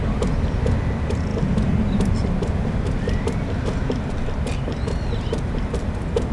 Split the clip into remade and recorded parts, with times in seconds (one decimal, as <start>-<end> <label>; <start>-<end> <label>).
0.0-6.3 recorded